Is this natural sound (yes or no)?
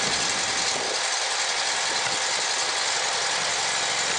yes